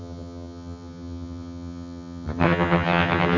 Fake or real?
fake